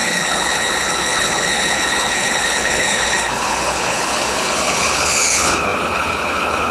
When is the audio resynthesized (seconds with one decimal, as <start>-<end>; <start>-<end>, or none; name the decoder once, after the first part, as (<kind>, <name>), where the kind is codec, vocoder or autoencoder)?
0.0-6.7 (codec, HILCodec)